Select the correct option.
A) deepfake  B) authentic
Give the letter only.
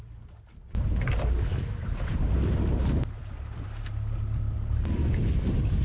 B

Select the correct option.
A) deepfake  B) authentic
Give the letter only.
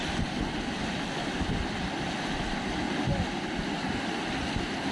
B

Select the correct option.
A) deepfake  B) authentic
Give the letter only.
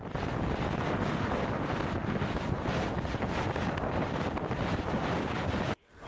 B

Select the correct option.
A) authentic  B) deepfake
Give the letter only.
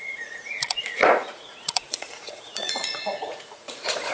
B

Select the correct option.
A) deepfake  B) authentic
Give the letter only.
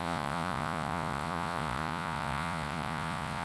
A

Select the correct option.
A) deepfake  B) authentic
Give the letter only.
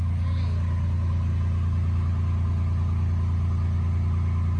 B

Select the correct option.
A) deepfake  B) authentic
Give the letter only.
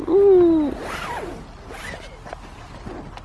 B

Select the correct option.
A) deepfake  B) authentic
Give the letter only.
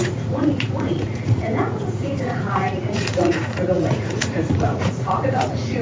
A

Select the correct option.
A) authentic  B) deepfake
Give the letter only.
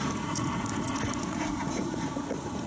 B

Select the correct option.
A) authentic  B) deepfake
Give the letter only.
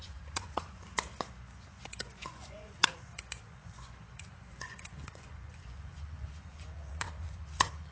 B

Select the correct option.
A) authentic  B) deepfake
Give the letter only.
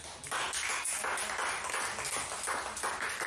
A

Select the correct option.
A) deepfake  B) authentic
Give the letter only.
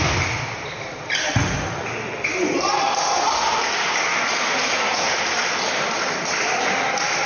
B